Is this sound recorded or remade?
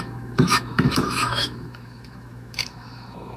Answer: remade